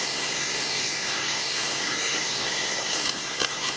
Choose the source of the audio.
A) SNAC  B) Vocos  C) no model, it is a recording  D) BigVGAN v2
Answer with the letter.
A